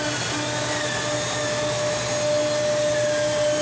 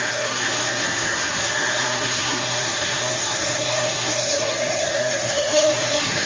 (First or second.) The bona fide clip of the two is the first